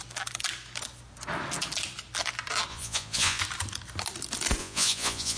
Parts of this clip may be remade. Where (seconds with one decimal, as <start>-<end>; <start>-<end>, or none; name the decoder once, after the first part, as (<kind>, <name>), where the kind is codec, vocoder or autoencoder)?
2.7-3.4 (vocoder, Vocos); 4.6-5.4